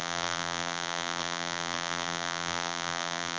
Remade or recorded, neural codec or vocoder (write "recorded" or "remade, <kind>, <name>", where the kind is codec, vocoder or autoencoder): remade, vocoder, BigVGAN v2